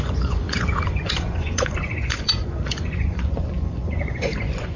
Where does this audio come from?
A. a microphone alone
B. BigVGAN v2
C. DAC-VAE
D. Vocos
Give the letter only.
D